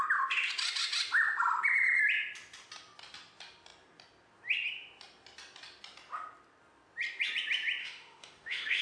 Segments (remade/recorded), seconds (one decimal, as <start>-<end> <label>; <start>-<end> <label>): 0.0-7.8 recorded; 7.8-8.8 remade